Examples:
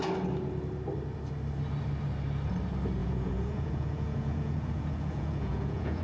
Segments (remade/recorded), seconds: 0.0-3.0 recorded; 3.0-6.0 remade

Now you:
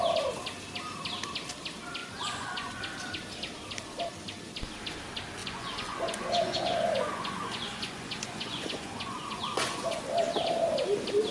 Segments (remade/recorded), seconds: 0.0-2.0 recorded; 2.0-2.8 remade; 2.8-5.4 recorded; 5.4-10.0 remade; 10.0-11.3 recorded

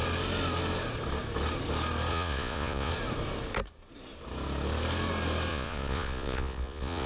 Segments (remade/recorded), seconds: 0.0-2.1 recorded; 2.1-2.9 remade; 2.9-5.5 recorded; 5.5-7.1 remade

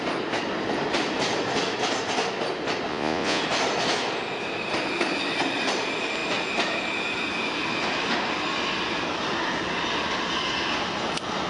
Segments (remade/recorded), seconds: 0.0-2.9 recorded; 2.9-3.4 remade; 3.4-11.5 recorded